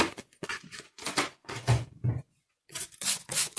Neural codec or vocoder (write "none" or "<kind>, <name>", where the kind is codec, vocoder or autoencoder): vocoder, Vocos